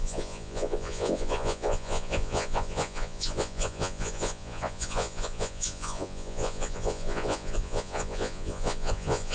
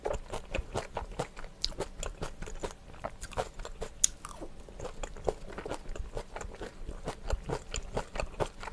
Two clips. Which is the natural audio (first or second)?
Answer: second